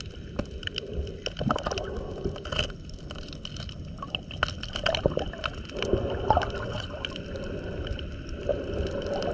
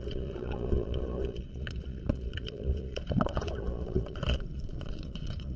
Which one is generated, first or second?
second